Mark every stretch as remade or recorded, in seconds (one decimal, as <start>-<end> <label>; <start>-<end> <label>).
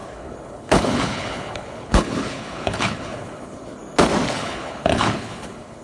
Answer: 0.0-3.8 remade; 3.8-4.3 recorded; 4.3-5.8 remade